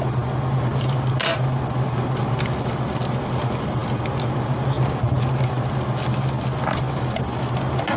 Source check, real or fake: real